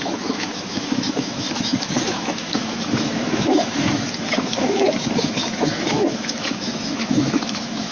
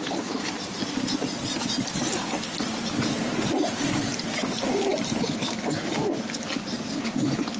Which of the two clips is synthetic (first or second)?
first